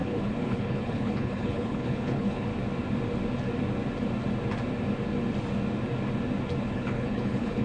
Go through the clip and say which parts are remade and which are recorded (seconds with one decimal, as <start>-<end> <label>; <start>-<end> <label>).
0.0-2.5 remade; 2.5-6.6 recorded; 6.6-7.6 remade